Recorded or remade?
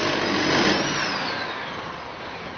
recorded